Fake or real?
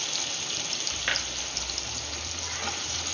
real